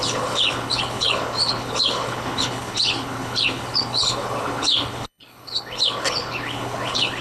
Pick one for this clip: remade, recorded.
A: remade